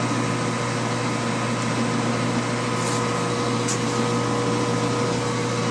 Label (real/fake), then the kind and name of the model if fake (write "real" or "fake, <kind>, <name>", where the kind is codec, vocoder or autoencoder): real